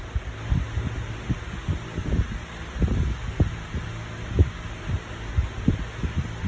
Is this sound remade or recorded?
recorded